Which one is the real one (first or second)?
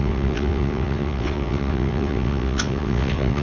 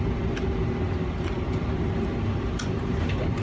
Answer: second